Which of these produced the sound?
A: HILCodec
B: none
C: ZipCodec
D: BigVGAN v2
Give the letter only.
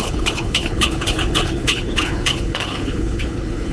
A